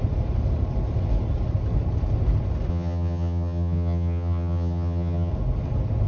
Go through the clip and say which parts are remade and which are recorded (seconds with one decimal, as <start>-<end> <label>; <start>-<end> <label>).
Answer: 0.0-2.7 recorded; 2.7-5.3 remade; 5.3-6.1 recorded